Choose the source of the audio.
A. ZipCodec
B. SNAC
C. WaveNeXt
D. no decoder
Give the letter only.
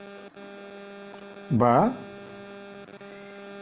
D